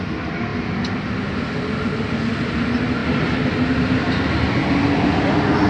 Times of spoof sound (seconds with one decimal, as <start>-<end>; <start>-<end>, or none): none